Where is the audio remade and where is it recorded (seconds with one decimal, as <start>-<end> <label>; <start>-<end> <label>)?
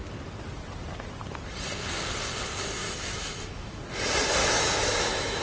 0.0-2.8 recorded; 2.8-3.8 remade; 3.8-4.4 recorded; 4.4-5.4 remade